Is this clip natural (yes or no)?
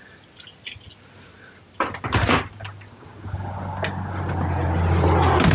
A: yes